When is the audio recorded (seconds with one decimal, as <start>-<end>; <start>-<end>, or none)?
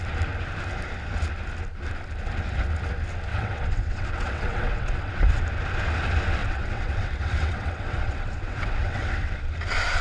0.0-3.3; 5.4-6.4; 9.4-10.0